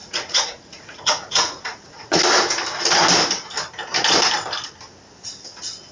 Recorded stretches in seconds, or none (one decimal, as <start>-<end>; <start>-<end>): 2.2-5.9